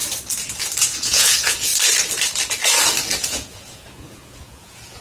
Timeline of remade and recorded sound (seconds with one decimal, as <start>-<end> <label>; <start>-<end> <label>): 0.0-0.8 recorded; 0.8-1.7 remade; 1.7-3.2 recorded; 3.2-5.0 remade